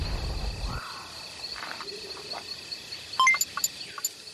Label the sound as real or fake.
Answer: real